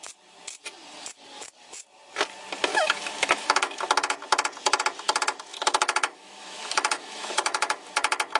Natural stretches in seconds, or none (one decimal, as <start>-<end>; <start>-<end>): 0.0-2.7; 3.8-5.5; 7.9-8.4